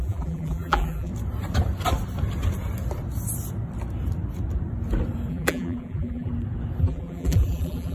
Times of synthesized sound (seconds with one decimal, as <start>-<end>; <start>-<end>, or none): 0.0-1.1; 5.3-6.3; 6.8-7.9